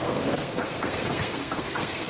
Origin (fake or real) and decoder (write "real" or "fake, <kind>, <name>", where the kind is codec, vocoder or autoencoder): fake, codec, SNAC